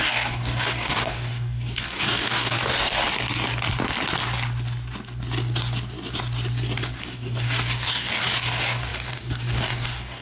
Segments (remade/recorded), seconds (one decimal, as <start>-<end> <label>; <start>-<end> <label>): 0.0-2.9 remade; 2.9-7.0 recorded; 7.0-10.2 remade

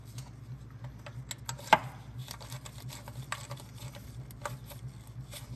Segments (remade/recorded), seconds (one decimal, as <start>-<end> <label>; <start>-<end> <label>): 0.0-5.6 recorded